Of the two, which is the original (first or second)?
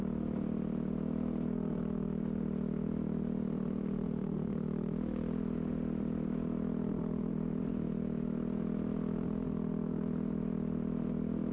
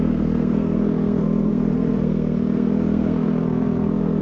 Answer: first